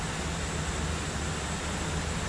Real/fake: real